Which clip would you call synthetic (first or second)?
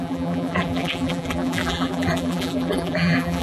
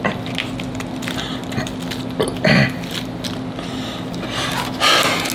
first